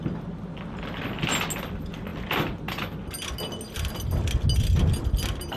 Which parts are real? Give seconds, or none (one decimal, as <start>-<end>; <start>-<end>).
0.0-5.6